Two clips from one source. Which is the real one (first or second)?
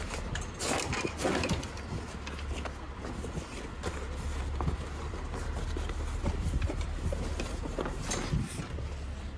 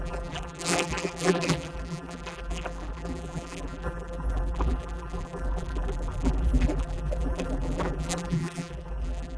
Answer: first